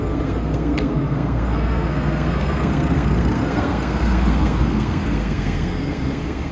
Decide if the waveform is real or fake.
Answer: fake